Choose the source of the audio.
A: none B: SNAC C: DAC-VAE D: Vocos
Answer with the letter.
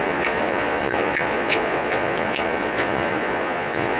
D